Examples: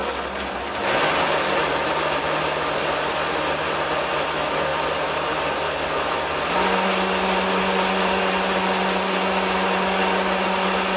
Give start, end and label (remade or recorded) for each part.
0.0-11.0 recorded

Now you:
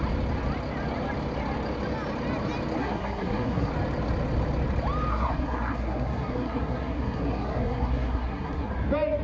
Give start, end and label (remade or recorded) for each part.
0.0-2.8 recorded; 2.8-3.7 remade; 3.7-5.1 recorded; 5.1-8.7 remade; 8.7-9.2 recorded

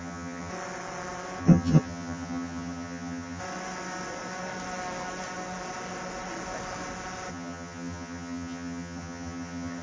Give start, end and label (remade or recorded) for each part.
0.0-0.5 remade; 0.5-1.4 recorded; 1.4-3.4 remade; 3.4-7.3 recorded; 7.3-9.8 remade